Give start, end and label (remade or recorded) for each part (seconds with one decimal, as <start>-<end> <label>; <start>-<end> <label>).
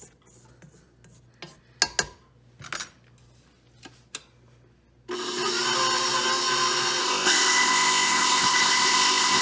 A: 0.0-7.0 recorded; 7.0-9.4 remade